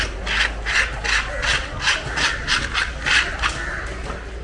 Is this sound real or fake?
real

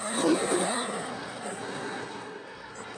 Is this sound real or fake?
fake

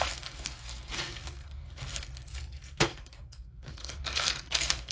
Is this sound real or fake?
fake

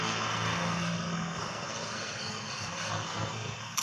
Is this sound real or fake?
fake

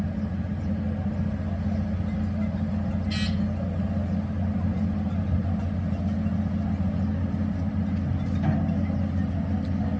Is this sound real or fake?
real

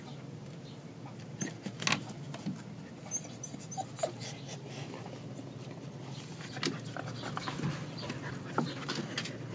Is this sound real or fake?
real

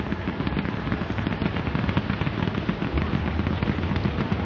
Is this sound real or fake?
real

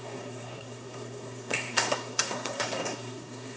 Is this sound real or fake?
fake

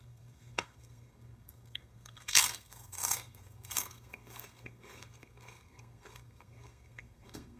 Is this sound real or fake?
fake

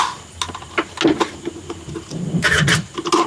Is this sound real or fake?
real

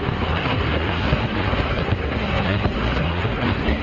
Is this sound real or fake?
fake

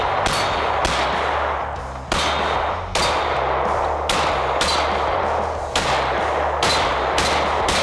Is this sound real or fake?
real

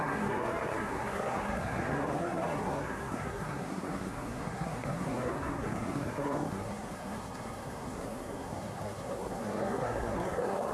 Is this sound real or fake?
fake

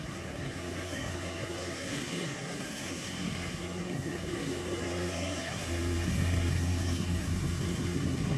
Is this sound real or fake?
fake